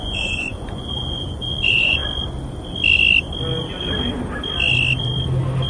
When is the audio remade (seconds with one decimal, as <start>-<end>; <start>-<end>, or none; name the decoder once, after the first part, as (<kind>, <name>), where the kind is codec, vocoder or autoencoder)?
0.0-2.0 (vocoder, Vocos)